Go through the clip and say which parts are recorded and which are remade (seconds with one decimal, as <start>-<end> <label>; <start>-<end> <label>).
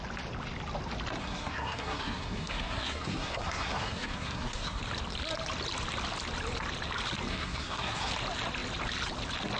0.0-1.2 recorded; 1.2-4.8 remade; 4.8-7.3 recorded; 7.3-8.1 remade; 8.1-9.6 recorded